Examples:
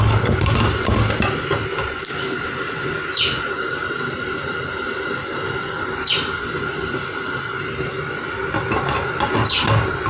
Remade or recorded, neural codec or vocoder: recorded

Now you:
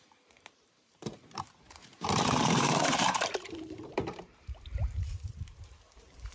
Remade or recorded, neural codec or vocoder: remade, vocoder, BigVGAN v2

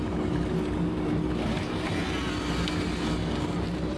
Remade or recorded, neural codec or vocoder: recorded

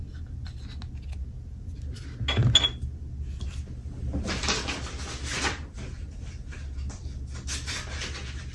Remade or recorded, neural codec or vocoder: recorded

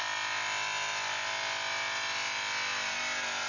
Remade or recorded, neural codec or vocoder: recorded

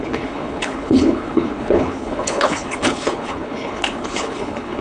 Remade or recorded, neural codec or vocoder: remade, codec, HILCodec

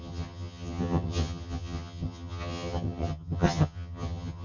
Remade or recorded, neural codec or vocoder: remade, vocoder, HiFi-GAN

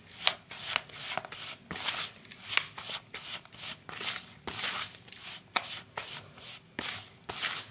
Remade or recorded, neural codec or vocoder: recorded